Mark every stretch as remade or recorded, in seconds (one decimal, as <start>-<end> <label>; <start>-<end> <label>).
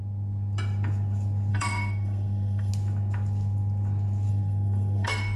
0.0-1.5 recorded; 1.5-2.7 remade; 2.7-4.3 recorded; 4.3-5.4 remade